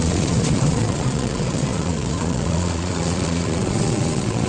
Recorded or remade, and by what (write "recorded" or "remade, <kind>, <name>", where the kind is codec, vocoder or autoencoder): remade, vocoder, Vocos